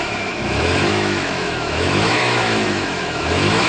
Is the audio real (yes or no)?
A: no